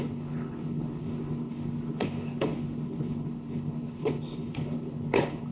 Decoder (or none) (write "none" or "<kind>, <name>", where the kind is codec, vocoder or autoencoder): codec, HILCodec